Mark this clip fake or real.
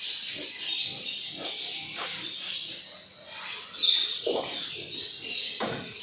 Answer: real